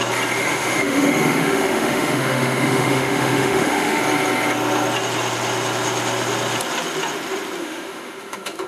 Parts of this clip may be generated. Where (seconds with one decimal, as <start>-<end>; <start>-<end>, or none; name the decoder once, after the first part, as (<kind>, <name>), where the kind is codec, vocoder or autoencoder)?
0.4-4.0 (autoencoder, DAC-VAE); 7.6-8.7